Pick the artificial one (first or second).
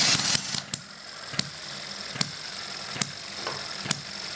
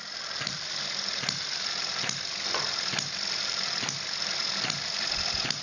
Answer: second